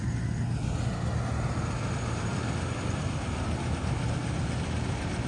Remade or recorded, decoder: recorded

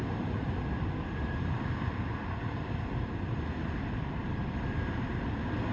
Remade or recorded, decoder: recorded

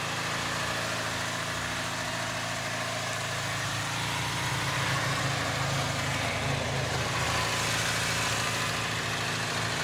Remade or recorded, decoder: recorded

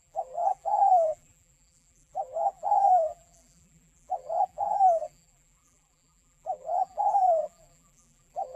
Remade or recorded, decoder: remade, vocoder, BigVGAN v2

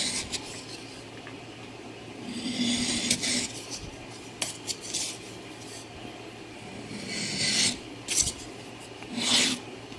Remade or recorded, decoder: recorded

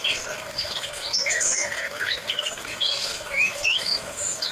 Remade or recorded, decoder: remade, codec, DAC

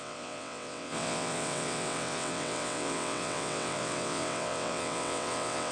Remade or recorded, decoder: remade, vocoder, WaveNeXt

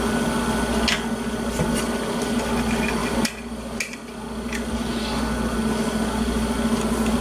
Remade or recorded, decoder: recorded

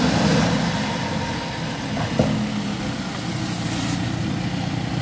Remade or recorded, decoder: recorded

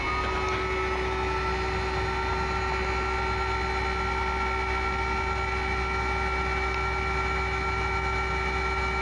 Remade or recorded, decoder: recorded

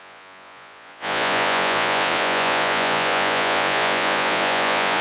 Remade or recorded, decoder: remade, vocoder, Vocos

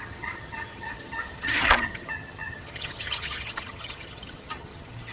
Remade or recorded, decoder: remade, vocoder, HiFi-GAN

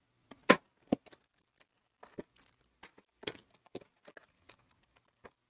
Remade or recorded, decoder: recorded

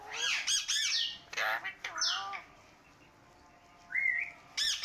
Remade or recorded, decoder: recorded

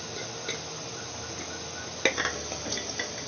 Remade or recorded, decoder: recorded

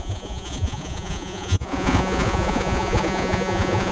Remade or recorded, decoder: remade, vocoder, Vocos